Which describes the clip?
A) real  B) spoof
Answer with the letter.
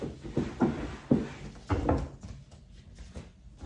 A